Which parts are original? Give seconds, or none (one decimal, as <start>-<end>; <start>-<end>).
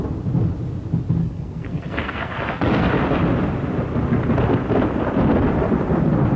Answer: 0.0-1.2; 2.9-6.4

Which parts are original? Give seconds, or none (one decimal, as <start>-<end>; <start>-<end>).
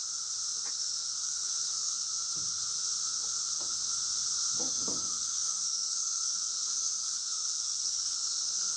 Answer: 0.0-0.7; 2.1-4.6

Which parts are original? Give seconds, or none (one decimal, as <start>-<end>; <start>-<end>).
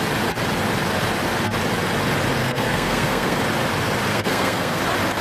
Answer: 0.0-2.4; 3.4-4.1; 4.8-5.2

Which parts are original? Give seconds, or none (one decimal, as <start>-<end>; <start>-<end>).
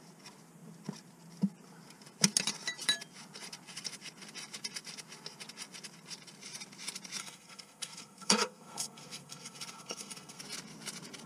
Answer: 0.0-7.2; 10.4-11.3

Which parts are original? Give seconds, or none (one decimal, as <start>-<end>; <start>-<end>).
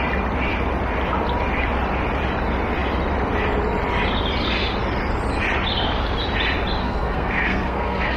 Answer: 0.0-6.8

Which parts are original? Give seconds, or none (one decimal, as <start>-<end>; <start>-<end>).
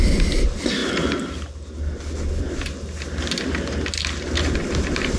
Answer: 0.0-5.2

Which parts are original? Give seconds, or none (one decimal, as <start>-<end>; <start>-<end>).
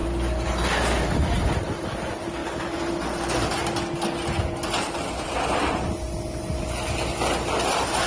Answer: 0.0-8.1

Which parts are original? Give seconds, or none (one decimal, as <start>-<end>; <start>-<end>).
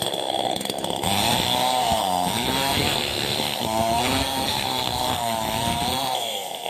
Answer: none